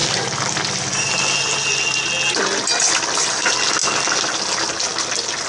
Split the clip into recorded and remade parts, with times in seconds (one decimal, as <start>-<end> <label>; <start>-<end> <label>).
0.0-5.5 recorded